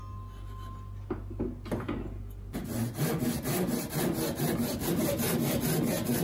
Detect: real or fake real